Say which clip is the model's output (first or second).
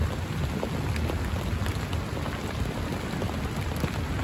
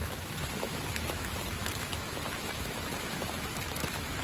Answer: second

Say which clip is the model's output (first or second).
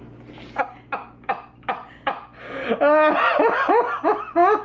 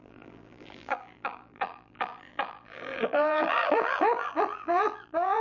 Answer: second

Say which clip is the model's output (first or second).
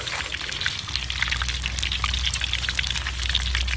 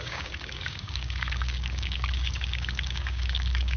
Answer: second